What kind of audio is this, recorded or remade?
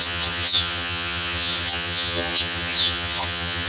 remade